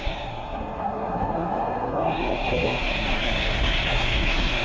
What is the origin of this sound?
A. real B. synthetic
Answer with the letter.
B